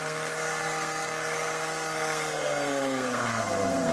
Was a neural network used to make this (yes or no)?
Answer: yes